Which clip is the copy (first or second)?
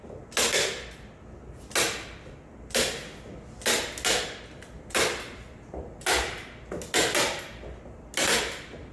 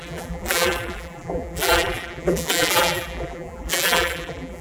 second